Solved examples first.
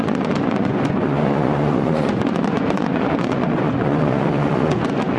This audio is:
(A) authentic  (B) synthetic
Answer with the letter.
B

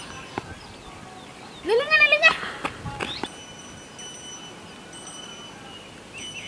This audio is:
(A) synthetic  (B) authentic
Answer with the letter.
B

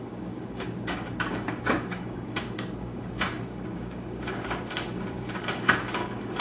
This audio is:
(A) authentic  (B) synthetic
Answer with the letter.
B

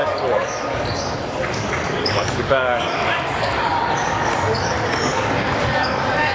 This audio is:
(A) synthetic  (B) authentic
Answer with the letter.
A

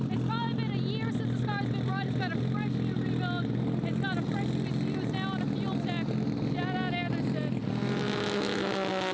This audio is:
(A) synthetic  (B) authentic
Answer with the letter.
B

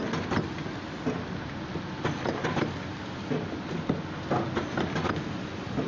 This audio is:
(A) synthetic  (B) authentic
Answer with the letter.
B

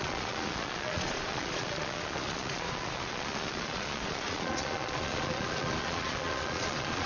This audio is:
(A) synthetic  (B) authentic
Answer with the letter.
A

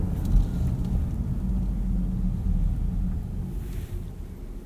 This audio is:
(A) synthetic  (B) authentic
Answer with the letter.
B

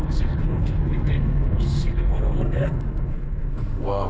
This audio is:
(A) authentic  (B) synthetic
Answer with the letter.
B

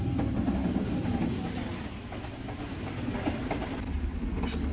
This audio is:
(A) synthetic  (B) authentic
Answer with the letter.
B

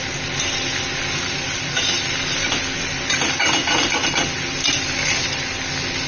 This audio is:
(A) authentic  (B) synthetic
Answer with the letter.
A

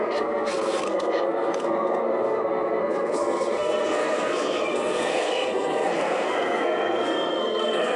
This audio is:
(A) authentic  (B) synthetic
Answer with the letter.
B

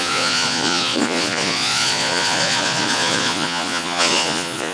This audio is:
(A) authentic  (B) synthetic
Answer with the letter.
B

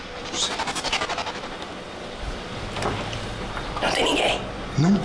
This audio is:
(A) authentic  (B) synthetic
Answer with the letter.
B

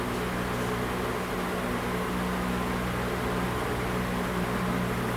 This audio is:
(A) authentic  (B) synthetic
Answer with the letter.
A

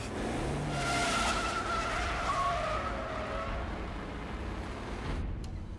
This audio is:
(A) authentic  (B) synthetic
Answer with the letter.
A